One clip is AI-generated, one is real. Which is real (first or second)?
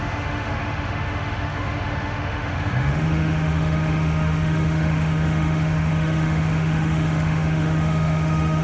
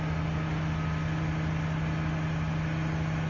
second